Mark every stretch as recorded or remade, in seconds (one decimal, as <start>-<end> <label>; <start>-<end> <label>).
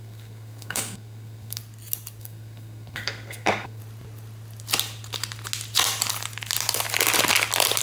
0.0-1.6 remade; 1.6-2.2 recorded; 2.2-3.8 remade; 3.8-7.8 recorded